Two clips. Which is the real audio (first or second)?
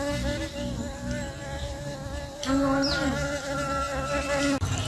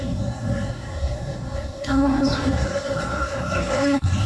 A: first